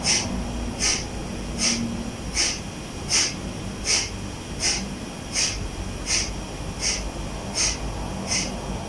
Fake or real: real